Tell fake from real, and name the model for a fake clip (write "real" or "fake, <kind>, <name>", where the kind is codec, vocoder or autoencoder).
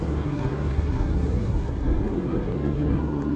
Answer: fake, codec, SNAC